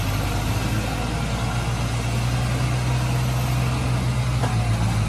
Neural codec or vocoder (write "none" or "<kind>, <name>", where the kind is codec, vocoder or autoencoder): none